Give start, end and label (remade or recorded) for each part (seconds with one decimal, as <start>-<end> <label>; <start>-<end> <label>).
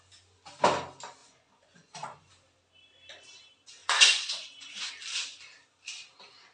0.0-1.2 recorded; 1.2-2.3 remade; 2.3-3.8 recorded; 3.8-4.9 remade; 4.9-6.5 recorded